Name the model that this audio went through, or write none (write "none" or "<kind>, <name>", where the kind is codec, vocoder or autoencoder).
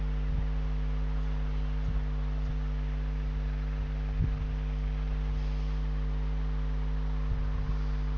none